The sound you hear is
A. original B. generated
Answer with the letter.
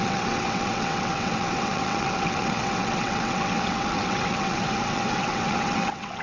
B